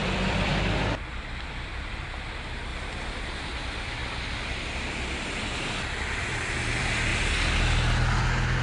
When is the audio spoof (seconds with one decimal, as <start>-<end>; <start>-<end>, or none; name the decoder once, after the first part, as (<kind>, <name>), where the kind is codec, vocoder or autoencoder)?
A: 0.0-4.0 (vocoder, BigVGAN v2); 5.8-7.1; 8.2-8.6